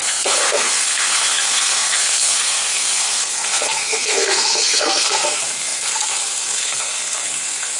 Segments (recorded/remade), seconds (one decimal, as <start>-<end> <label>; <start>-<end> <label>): 0.0-7.8 remade